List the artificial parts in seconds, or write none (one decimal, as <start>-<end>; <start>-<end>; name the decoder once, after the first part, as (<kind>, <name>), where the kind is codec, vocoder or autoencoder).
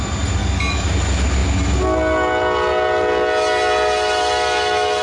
0.4-0.9 (codec, DAC)